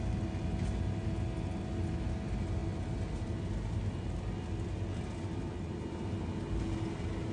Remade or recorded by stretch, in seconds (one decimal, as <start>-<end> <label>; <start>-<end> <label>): 0.0-7.3 recorded